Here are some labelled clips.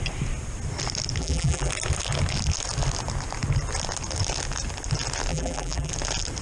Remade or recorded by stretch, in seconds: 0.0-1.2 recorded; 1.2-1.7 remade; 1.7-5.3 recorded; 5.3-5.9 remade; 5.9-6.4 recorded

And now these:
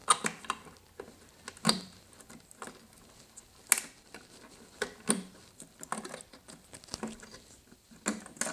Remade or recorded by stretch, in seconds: 0.0-8.5 recorded

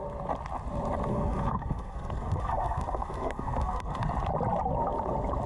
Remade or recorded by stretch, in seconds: 0.0-1.1 recorded; 1.1-4.0 remade; 4.0-5.5 recorded

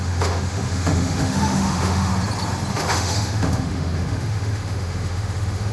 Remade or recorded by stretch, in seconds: 0.0-2.1 remade; 2.1-2.7 recorded; 2.7-5.7 remade